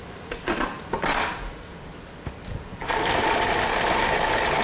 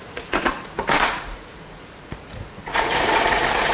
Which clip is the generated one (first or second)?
second